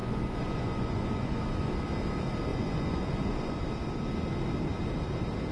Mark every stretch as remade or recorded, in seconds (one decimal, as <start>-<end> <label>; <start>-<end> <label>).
0.0-1.7 remade; 1.7-2.5 recorded; 2.5-3.6 remade; 3.6-5.5 recorded